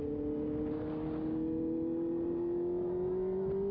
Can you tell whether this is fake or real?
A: real